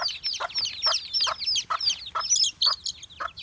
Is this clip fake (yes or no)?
no